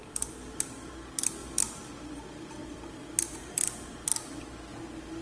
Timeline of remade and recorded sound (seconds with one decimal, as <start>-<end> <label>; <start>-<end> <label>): 0.0-0.9 remade; 0.9-1.4 recorded; 1.4-1.9 remade; 1.9-2.6 recorded; 2.6-3.9 remade; 3.9-5.2 recorded